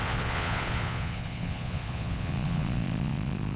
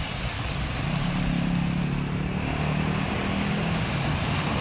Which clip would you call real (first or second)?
second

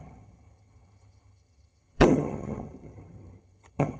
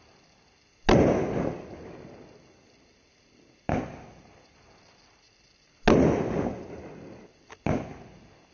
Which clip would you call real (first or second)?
second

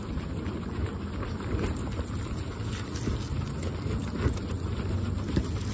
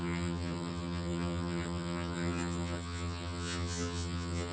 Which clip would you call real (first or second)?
first